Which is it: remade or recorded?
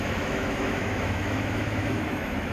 remade